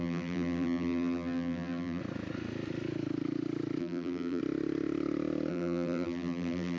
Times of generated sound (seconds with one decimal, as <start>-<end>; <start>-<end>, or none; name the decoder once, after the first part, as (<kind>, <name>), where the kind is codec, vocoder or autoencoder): 0.0-2.0 (vocoder, BigVGAN v2); 3.8-4.4; 5.5-6.8